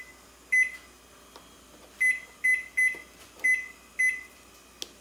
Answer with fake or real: real